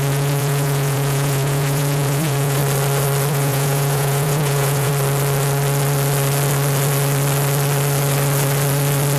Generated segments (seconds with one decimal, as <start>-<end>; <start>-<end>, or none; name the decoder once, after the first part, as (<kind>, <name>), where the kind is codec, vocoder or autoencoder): 0.0-2.6 (vocoder, Vocos); 3.3-4.9